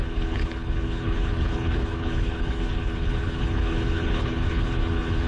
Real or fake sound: fake